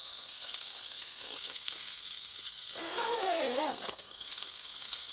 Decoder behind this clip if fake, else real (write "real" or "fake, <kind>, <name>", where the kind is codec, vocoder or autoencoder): fake, codec, SNAC